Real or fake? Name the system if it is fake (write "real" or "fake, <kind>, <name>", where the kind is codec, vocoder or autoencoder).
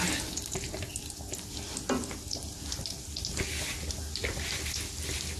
real